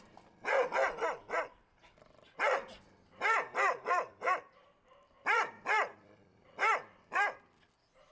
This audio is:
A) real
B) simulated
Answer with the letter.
B